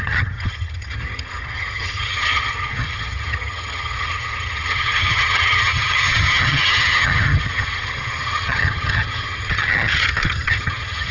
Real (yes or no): no